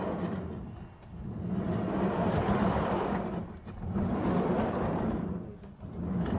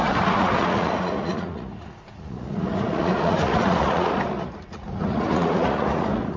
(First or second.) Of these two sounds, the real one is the first